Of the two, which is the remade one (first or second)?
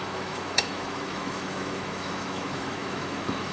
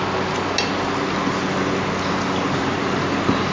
first